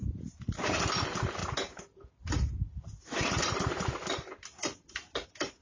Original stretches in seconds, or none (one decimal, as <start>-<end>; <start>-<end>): 0.0-5.6